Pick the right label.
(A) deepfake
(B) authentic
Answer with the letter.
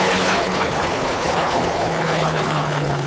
A